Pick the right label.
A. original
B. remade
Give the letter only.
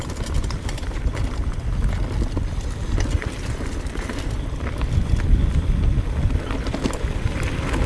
A